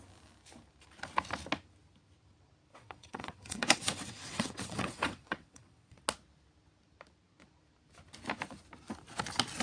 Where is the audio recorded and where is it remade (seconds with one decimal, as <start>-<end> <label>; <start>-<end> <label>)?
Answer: 0.0-2.7 recorded; 2.7-6.0 remade; 6.0-9.6 recorded